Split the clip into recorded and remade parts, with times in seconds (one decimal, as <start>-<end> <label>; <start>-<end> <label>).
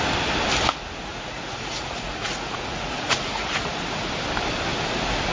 0.0-1.1 recorded; 1.1-4.1 remade; 4.1-5.3 recorded